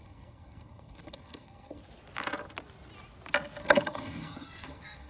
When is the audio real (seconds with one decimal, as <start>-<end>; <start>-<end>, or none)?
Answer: 1.8-3.6

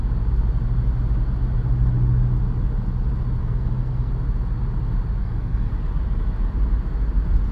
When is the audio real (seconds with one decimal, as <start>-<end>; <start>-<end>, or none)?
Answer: 0.0-3.4; 4.1-5.2; 5.7-7.5